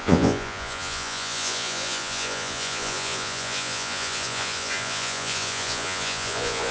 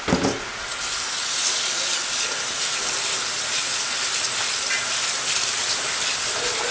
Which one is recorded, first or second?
second